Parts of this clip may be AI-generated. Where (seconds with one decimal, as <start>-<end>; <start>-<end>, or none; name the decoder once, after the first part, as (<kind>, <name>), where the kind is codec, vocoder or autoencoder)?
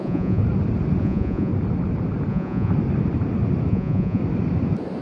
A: 0.0-0.4 (vocoder, Vocos); 1.0-1.5; 2.3-2.7; 3.7-4.2